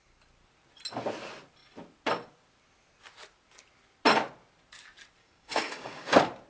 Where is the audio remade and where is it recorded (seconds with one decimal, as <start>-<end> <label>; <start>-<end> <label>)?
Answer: 0.0-5.2 recorded; 5.2-6.1 remade; 6.1-6.5 recorded